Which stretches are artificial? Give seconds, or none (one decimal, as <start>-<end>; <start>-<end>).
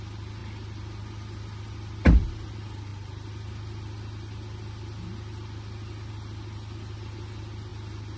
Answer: none